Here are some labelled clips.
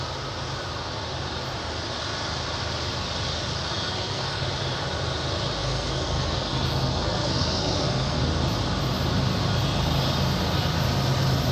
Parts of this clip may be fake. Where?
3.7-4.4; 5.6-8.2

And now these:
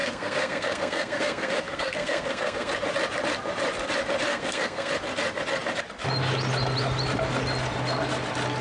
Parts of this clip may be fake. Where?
0.0-2.7; 4.3-4.9